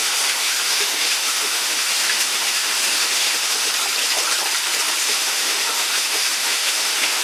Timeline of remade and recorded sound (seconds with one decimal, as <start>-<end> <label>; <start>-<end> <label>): 0.0-3.7 remade; 3.7-5.0 recorded; 5.0-7.2 remade